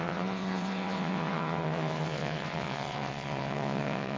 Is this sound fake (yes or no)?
yes